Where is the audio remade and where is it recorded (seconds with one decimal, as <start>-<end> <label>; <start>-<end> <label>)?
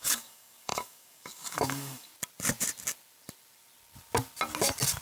0.0-2.1 remade; 2.1-5.0 recorded